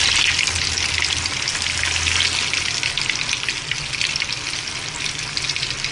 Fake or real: real